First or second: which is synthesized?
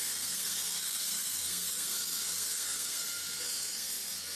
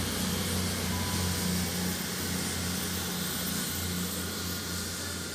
first